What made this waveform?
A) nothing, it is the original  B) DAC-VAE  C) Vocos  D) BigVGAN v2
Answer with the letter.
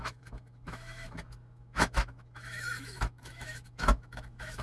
B